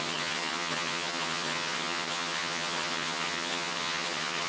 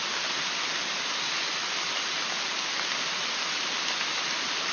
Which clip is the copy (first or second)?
first